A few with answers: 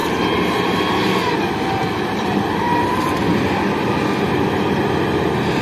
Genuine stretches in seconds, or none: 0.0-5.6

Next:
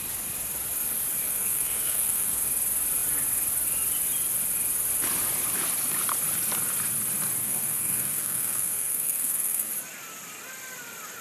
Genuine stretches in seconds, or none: 0.0-1.3; 2.4-7.4; 9.7-11.2

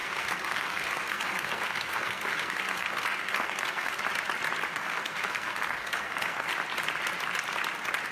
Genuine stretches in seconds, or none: 4.0-4.7; 6.5-8.1